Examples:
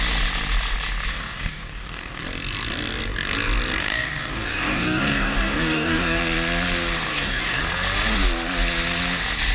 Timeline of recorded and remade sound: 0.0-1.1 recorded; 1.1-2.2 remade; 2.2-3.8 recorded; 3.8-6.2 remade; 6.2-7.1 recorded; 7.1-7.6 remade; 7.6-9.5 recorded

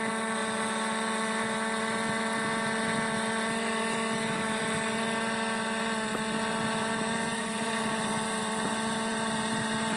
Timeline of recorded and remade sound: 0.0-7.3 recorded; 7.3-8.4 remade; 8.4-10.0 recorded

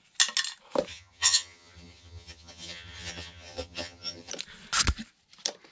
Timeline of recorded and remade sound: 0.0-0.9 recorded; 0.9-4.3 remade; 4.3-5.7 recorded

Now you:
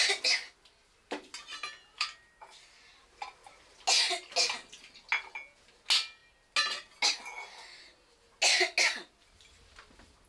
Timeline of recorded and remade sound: 0.0-10.3 recorded

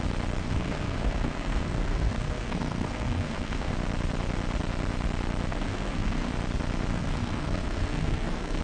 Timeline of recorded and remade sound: 0.0-0.4 recorded; 0.4-3.7 remade; 3.7-5.5 recorded; 5.5-6.3 remade; 6.3-6.9 recorded; 6.9-8.6 remade